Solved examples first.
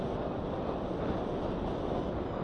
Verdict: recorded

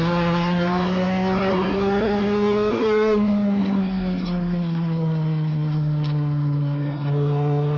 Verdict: remade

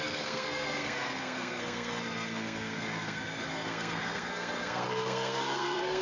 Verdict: remade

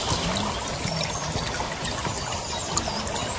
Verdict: recorded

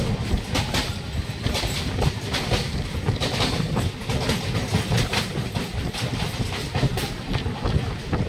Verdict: recorded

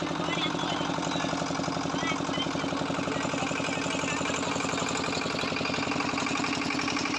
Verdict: recorded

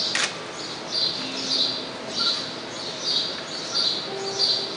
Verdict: recorded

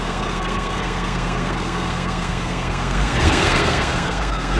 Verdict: remade